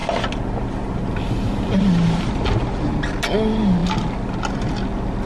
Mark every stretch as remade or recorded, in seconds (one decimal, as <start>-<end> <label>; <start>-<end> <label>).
0.0-5.3 recorded